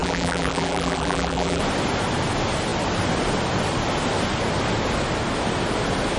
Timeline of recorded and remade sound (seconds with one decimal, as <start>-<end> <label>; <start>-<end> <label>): 0.0-1.6 remade; 1.6-6.2 recorded